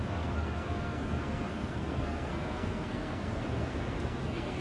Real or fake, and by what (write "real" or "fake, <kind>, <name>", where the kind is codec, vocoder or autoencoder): fake, codec, SNAC